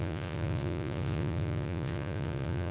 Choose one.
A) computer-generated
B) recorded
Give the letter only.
A